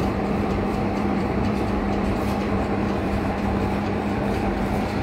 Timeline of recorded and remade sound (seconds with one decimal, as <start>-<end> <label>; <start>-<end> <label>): 0.0-5.0 remade